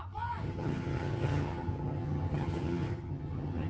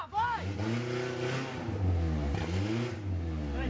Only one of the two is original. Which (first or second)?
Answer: second